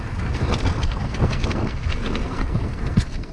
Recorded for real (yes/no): no